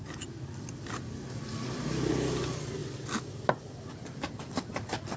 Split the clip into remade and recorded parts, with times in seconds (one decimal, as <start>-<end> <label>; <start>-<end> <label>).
0.0-5.2 recorded

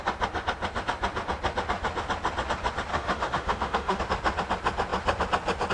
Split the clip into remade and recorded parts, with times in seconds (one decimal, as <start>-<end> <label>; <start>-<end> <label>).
0.0-2.9 recorded; 2.9-4.0 remade; 4.0-5.7 recorded